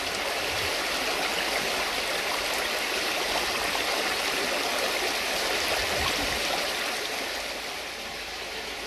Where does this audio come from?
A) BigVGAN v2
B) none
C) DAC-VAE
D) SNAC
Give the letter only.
B